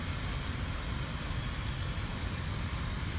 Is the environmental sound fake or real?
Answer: real